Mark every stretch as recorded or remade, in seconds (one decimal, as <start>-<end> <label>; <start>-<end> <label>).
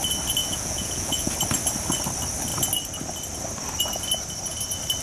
0.0-0.4 recorded; 0.4-1.3 remade; 1.3-5.0 recorded